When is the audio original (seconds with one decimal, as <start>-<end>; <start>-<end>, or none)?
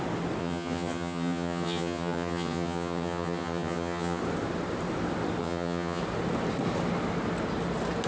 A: 0.0-0.4; 4.2-5.4; 6.0-8.1